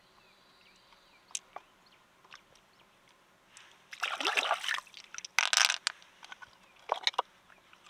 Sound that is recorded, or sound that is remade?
recorded